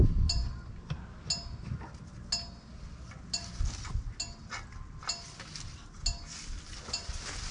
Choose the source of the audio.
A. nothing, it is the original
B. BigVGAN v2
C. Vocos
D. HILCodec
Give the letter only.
A